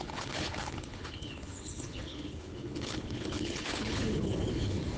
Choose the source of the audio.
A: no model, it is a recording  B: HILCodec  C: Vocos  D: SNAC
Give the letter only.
B